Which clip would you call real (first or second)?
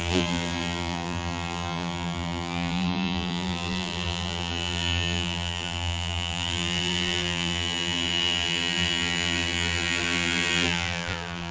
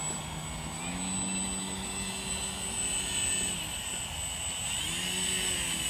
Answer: second